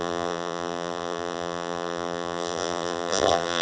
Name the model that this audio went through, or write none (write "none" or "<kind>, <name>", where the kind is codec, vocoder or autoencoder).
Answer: vocoder, BigVGAN v2